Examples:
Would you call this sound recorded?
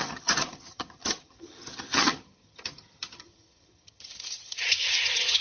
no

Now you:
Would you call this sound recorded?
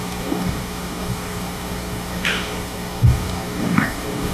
no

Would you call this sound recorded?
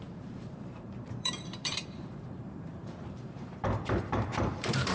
no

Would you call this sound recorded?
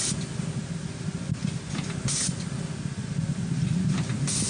yes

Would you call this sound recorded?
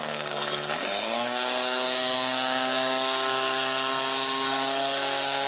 no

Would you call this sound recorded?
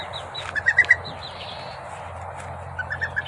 yes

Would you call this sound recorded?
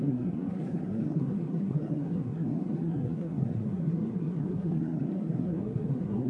no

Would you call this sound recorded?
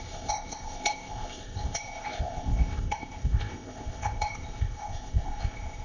no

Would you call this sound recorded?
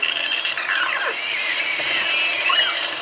yes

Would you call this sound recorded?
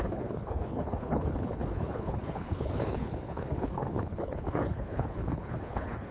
no